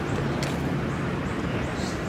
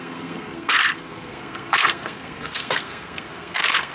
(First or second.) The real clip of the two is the first